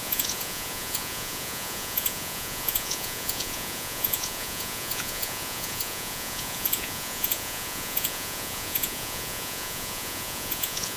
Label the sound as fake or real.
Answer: fake